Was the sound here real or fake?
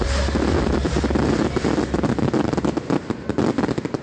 real